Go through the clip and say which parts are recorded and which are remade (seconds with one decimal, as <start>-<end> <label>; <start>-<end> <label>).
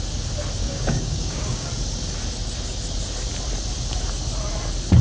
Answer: 0.0-0.6 recorded; 0.6-1.7 remade; 1.7-5.0 recorded